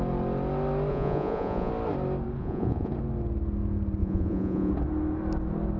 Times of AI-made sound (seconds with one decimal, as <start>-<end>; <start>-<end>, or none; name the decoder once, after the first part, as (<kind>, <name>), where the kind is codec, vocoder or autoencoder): 0.9-1.7 (vocoder, Vocos); 2.4-2.9; 4.0-4.7